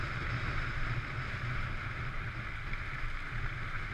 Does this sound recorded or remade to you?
recorded